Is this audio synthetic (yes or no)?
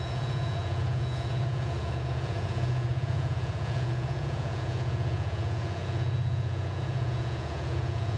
yes